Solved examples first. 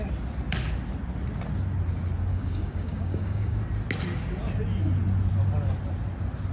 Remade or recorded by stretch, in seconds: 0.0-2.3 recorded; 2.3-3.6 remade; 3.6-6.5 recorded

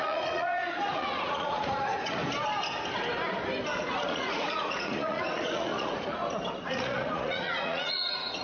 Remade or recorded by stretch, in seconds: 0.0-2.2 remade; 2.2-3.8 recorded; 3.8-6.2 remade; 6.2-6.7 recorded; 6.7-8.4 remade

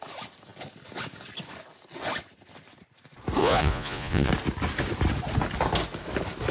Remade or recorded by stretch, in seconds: 0.0-3.4 recorded; 3.4-4.3 remade; 4.3-6.5 recorded